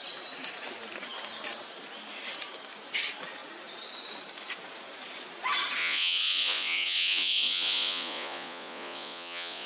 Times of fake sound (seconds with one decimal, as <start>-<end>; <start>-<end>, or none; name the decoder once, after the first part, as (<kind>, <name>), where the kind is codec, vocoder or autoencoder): 5.8-9.7 (vocoder, Vocos)